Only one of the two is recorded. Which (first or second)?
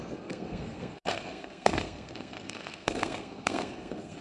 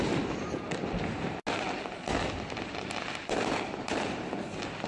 second